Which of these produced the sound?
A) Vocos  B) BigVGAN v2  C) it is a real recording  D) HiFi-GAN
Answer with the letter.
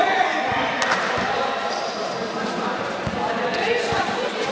C